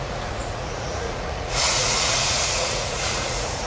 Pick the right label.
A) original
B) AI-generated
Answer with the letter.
B